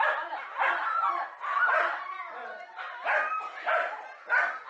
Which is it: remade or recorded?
recorded